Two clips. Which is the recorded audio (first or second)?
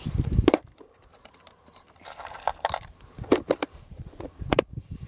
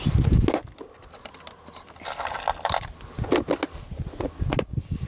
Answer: second